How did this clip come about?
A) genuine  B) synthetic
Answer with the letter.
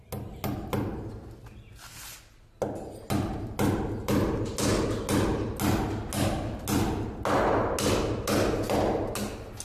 A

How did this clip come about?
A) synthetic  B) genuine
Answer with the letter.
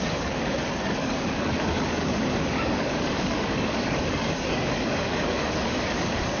A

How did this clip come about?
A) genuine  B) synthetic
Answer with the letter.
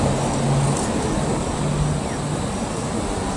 A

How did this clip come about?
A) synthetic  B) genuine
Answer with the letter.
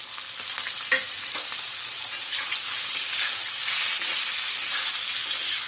B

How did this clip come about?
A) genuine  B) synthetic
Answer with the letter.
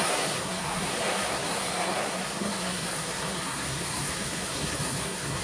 B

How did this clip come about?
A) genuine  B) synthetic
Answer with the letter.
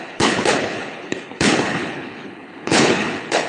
B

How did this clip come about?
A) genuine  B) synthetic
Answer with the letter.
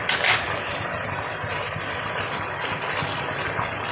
A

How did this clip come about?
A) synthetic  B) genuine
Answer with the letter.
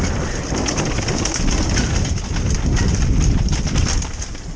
B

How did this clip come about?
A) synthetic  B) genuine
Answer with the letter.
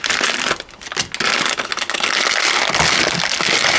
B